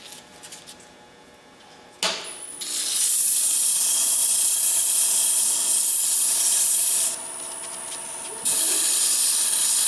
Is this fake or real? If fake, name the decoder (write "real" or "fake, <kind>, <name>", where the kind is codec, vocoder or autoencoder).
real